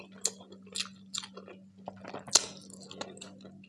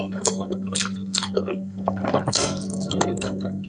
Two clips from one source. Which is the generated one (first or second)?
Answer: second